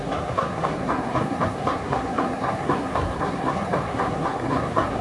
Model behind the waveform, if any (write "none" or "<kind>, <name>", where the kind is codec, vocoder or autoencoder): codec, SNAC